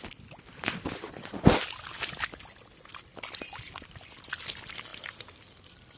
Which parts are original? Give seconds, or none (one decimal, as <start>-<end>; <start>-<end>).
0.0-2.9; 4.3-4.9; 5.6-6.0